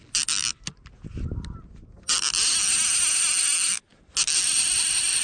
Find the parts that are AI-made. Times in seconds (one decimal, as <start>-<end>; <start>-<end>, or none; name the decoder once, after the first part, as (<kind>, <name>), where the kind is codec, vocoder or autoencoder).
none